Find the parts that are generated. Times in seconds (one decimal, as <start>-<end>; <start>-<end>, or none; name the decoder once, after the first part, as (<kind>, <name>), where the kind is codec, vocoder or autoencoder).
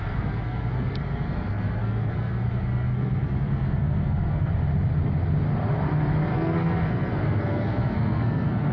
0.0-4.5 (codec, SNAC); 6.3-8.7